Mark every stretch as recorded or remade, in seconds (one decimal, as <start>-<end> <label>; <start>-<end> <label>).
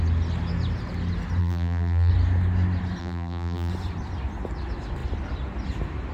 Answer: 0.0-1.4 recorded; 1.4-2.1 remade; 2.1-3.0 recorded; 3.0-3.7 remade; 3.7-6.1 recorded